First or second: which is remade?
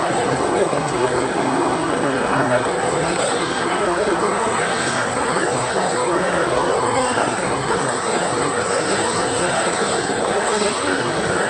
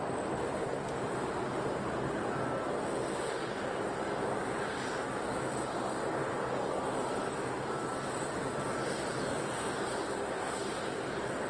first